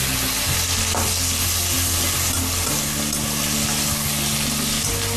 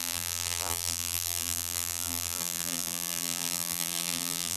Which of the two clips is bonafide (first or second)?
first